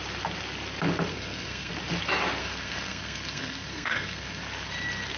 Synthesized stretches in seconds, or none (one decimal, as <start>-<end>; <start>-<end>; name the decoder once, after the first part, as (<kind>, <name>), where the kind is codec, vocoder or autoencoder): 1.1-1.7 (codec, SNAC); 2.4-4.4